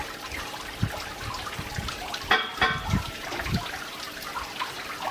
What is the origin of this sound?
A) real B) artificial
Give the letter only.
A